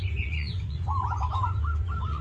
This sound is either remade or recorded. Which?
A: remade